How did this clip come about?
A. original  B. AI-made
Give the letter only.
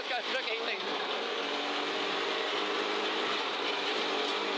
A